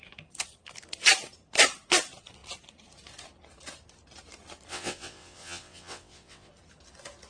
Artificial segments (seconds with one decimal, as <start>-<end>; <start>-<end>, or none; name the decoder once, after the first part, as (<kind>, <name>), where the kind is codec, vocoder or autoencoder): 4.7-6.5 (vocoder, WaveNeXt)